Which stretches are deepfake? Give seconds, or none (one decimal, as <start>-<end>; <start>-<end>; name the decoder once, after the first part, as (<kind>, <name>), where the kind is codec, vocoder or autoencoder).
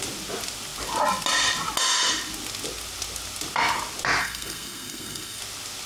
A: 4.2-5.4 (codec, SNAC)